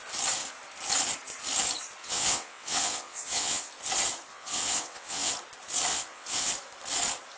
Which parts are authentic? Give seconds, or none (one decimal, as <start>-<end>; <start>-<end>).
0.0-2.0; 3.7-4.3; 5.3-5.9; 6.5-7.4